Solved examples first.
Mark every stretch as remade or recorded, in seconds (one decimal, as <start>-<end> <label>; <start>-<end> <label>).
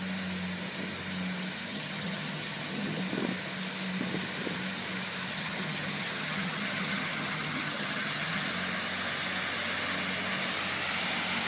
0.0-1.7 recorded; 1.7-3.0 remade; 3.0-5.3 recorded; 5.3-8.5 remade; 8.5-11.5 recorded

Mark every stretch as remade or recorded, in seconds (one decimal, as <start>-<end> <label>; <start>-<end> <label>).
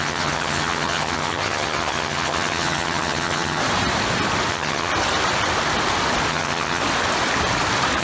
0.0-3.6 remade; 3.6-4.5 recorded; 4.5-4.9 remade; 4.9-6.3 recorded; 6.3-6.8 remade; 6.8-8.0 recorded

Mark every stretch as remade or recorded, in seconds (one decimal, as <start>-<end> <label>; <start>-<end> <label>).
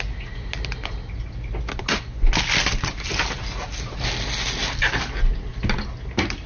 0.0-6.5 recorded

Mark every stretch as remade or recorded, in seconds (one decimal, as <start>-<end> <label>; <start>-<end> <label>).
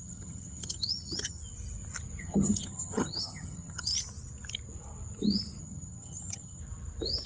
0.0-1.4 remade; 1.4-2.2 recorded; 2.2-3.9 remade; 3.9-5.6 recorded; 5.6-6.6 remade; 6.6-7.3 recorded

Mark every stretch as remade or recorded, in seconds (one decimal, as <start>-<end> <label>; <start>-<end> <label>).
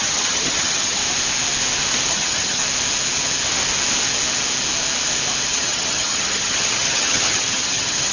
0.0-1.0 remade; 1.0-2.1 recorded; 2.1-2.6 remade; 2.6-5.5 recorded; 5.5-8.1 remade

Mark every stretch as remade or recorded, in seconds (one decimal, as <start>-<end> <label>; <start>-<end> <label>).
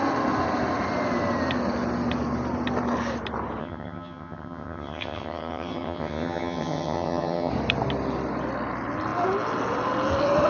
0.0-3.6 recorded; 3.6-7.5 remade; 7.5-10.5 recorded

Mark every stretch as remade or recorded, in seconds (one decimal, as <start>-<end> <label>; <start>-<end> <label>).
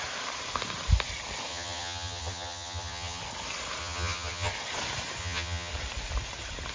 0.0-1.5 recorded; 1.5-3.2 remade; 3.2-3.8 recorded; 3.8-4.5 remade; 4.5-5.2 recorded; 5.2-5.7 remade; 5.7-6.7 recorded